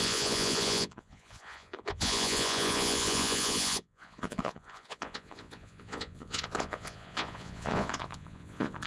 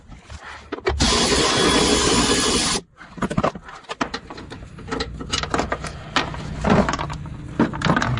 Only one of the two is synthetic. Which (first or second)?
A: first